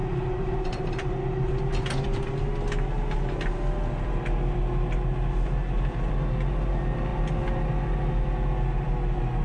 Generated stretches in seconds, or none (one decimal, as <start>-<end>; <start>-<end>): 0.0-1.1